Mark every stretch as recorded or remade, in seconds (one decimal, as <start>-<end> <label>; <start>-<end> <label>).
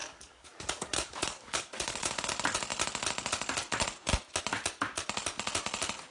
0.0-2.2 remade; 2.2-6.1 recorded